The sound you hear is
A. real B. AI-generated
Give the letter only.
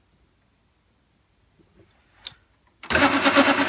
A